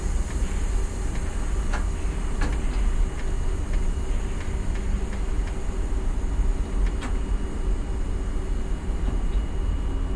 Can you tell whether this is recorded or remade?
recorded